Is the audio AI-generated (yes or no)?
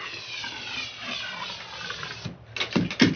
no